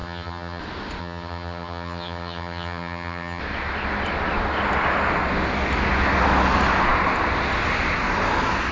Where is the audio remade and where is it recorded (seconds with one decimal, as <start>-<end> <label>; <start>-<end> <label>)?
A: 0.0-0.6 remade; 0.6-1.0 recorded; 1.0-3.4 remade; 3.4-8.7 recorded